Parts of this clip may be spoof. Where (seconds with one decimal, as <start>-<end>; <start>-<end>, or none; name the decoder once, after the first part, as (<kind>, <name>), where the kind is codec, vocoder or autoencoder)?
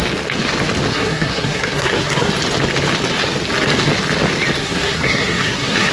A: 0.9-2.3 (codec, SNAC); 4.6-5.9